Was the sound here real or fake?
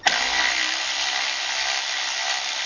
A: real